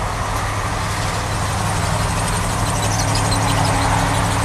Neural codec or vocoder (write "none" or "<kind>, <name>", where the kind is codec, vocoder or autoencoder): none